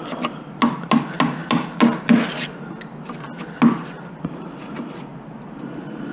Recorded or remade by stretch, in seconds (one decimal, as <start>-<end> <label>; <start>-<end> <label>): 0.0-6.1 recorded